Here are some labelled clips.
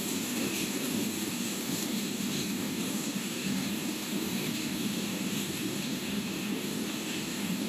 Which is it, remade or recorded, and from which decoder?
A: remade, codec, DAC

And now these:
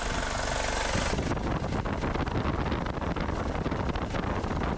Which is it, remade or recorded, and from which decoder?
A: recorded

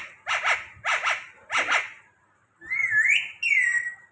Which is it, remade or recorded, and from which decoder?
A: recorded